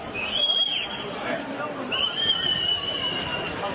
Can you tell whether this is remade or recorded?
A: remade